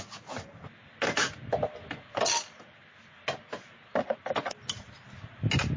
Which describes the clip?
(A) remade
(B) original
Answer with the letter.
B